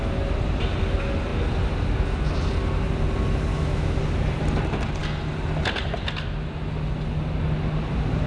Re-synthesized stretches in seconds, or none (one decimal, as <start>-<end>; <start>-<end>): 3.5-4.0